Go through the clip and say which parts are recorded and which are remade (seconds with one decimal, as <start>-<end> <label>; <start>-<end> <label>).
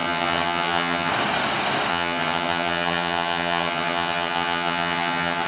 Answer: 0.0-1.1 remade; 1.1-1.9 recorded; 1.9-5.5 remade